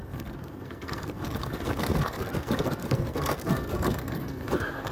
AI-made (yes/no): yes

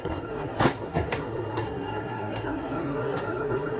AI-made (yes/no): yes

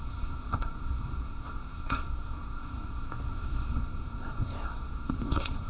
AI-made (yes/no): yes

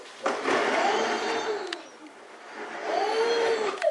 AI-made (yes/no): no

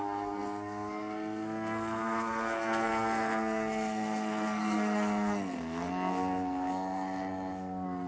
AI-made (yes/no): yes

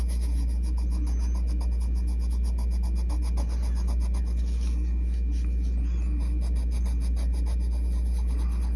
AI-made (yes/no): no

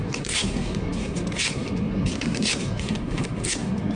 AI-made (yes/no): yes